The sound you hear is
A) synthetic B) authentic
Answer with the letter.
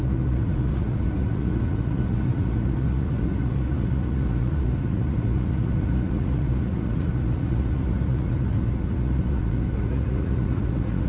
A